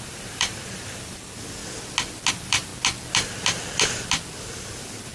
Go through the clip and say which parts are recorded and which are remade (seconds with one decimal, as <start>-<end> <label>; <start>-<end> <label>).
0.0-1.6 remade; 1.6-2.3 recorded; 2.3-2.7 remade; 2.7-4.4 recorded; 4.4-5.1 remade